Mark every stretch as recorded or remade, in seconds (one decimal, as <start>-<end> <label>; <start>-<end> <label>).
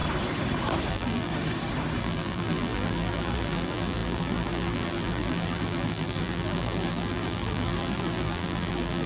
0.0-0.9 recorded; 0.9-1.3 remade; 1.3-2.0 recorded; 2.0-9.1 remade